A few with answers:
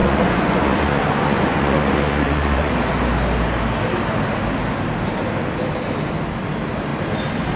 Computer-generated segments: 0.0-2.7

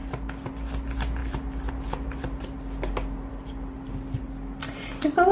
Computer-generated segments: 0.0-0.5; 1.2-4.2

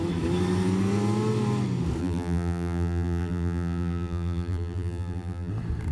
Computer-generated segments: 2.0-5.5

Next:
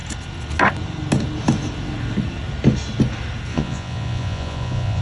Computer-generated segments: 3.5-5.0

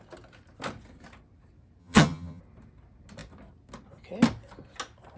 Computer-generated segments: 1.8-2.4